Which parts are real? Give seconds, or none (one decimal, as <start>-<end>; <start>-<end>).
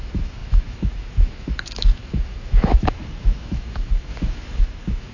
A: none